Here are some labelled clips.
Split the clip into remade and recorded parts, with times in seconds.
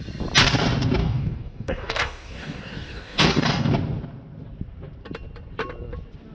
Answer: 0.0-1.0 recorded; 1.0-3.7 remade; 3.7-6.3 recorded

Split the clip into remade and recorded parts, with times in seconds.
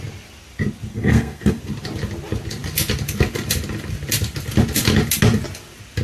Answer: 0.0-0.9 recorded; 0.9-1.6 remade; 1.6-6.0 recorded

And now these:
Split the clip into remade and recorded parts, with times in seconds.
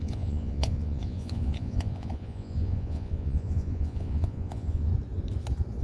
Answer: 0.0-4.9 remade; 4.9-5.8 recorded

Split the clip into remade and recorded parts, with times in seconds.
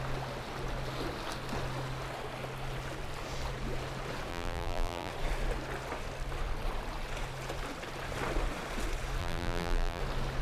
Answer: 0.0-4.3 recorded; 4.3-5.1 remade; 5.1-9.2 recorded; 9.2-10.0 remade; 10.0-10.4 recorded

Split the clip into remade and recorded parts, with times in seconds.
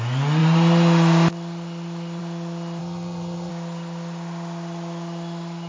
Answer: 0.0-2.8 recorded; 2.8-3.5 remade; 3.5-5.7 recorded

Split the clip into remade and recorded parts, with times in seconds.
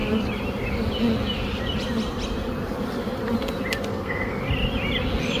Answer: 0.0-3.9 recorded; 3.9-4.4 remade; 4.4-5.4 recorded